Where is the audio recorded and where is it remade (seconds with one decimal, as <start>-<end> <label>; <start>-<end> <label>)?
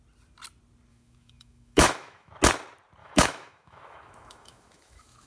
0.0-0.9 recorded; 0.9-2.3 remade; 2.3-3.0 recorded; 3.0-5.3 remade